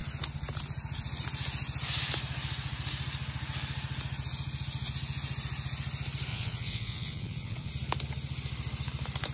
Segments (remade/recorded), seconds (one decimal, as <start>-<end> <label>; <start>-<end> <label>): 0.0-6.3 recorded; 6.3-7.7 remade; 7.7-9.3 recorded